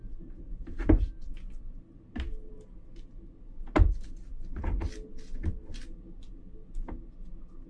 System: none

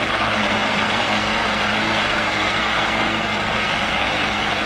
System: codec, SNAC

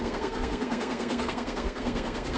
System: codec, SNAC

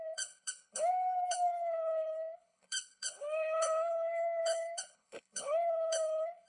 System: codec, HILCodec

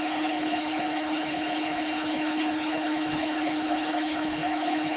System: codec, HILCodec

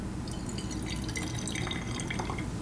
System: none